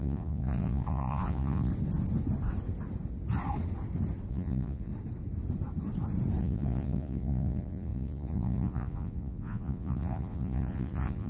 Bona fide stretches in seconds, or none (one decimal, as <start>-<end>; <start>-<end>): 1.7-4.3; 4.9-6.4

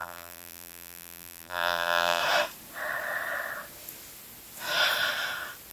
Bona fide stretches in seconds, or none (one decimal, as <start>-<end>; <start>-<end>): 2.2-5.7

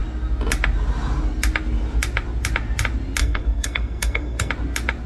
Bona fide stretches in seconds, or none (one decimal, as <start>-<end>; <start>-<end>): 0.0-3.2; 4.5-5.1